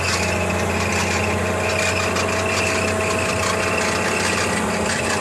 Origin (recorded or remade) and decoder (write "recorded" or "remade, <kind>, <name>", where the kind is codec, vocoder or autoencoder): recorded